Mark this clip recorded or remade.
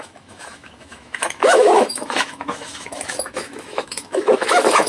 remade